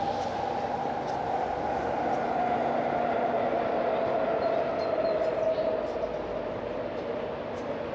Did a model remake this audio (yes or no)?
no